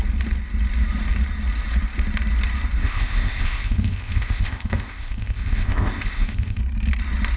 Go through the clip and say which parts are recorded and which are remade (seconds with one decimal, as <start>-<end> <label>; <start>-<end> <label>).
0.0-2.8 recorded; 2.8-6.6 remade; 6.6-7.4 recorded